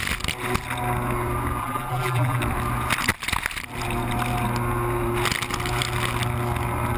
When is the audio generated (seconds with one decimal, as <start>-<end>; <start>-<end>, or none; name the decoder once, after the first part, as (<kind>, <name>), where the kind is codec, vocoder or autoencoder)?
1.6-2.4 (vocoder, BigVGAN v2)